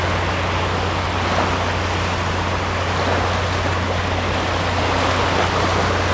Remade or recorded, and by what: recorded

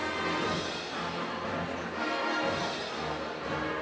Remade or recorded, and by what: recorded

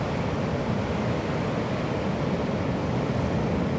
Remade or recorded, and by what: recorded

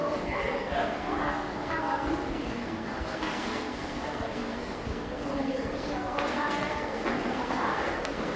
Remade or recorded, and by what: remade, codec, SNAC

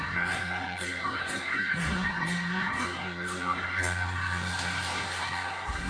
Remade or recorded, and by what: remade, codec, SNAC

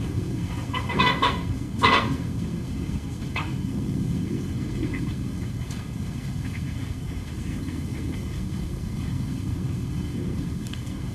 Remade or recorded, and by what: remade, codec, SNAC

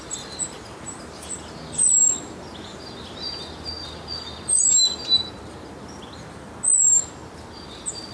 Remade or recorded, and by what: recorded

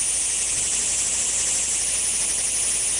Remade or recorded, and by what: recorded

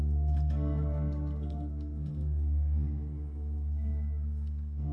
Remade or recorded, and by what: remade, codec, SNAC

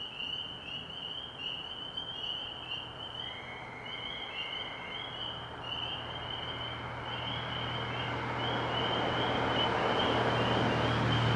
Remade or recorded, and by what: recorded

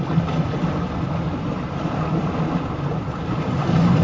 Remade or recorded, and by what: recorded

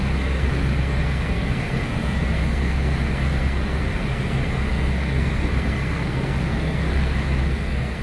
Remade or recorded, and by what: remade, codec, SNAC